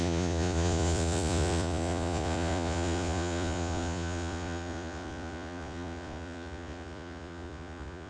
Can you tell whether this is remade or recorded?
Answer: remade